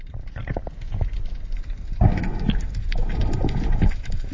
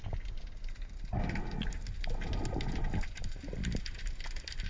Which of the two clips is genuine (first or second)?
second